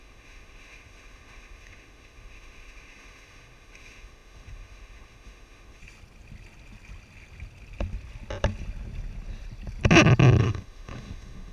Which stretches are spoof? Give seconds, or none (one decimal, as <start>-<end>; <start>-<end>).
0.0-5.8; 10.4-11.5